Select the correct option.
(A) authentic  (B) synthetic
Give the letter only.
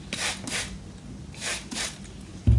A